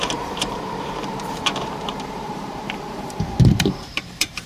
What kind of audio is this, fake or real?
fake